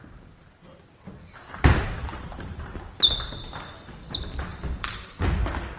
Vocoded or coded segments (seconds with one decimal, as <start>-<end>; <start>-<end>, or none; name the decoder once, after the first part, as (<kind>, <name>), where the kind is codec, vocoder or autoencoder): 2.0-2.7 (vocoder, BigVGAN v2); 4.5-5.1